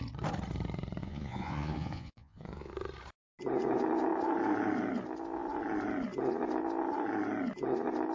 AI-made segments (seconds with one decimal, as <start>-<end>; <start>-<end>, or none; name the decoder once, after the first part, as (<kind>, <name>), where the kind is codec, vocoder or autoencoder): 1.0-2.7 (vocoder, Vocos)